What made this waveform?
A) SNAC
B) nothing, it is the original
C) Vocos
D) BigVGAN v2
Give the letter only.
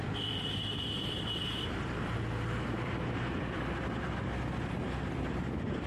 D